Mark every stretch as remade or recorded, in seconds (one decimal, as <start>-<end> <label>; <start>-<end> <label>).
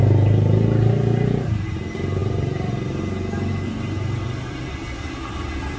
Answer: 0.0-5.8 recorded